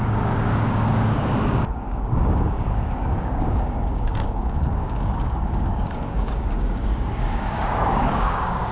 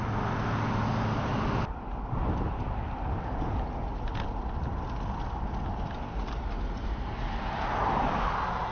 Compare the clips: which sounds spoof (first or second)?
first